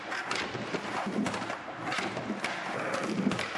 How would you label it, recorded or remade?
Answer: recorded